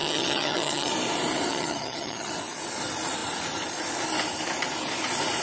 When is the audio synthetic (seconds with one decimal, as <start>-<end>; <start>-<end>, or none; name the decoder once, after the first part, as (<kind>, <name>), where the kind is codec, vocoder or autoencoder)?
0.0-0.9 (vocoder, HiFi-GAN); 1.5-2.3